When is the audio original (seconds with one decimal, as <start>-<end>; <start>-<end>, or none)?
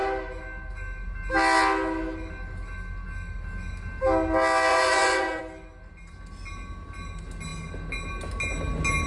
0.0-4.7; 5.4-9.1